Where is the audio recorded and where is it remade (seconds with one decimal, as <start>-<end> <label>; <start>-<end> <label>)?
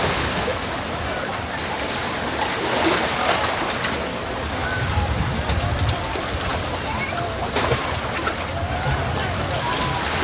0.0-10.2 recorded